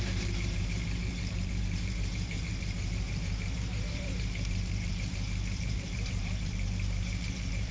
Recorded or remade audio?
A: remade